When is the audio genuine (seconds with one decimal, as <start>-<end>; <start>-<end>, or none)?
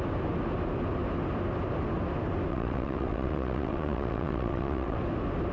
0.0-2.5; 5.0-5.5